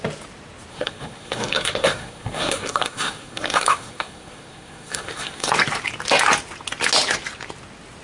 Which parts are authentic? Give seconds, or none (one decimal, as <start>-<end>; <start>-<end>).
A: 0.0-0.7; 5.5-8.0